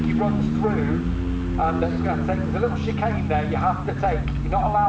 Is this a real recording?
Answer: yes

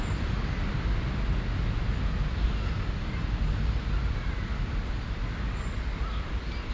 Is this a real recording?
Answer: yes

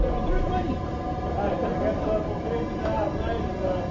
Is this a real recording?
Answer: yes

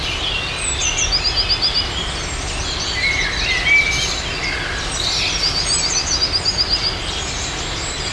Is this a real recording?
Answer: yes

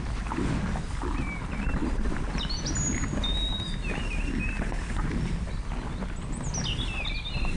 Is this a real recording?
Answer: yes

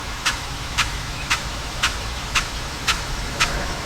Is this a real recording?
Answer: no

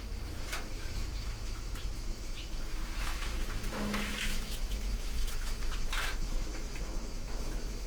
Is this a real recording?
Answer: no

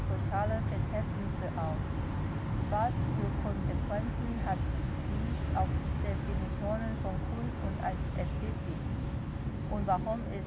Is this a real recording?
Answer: yes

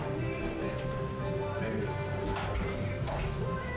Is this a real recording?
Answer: yes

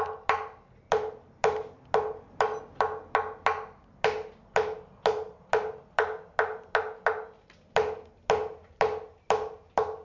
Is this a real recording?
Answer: yes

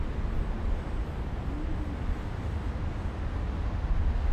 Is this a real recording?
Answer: yes